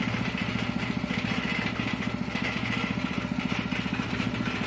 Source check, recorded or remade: recorded